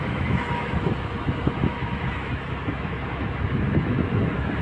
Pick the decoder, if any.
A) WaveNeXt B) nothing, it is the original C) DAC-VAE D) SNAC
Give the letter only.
C